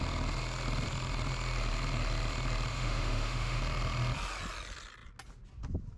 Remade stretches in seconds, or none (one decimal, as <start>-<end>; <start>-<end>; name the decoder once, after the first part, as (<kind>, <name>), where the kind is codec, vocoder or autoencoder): 2.7-3.6 (autoencoder, DAC-VAE)

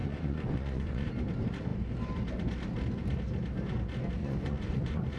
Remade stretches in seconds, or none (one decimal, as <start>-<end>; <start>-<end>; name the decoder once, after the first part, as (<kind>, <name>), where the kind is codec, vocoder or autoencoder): 0.0-1.1 (vocoder, Vocos); 4.2-5.2

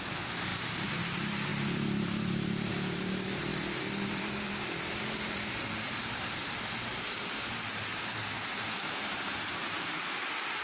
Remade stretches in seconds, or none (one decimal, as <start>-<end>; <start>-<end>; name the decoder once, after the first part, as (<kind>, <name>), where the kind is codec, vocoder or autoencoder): 0.0-10.6 (vocoder, BigVGAN v2)